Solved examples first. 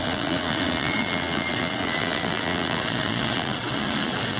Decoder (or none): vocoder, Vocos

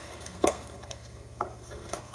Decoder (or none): codec, SNAC